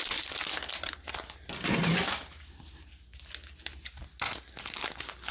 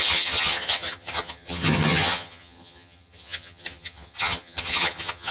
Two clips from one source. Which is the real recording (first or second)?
first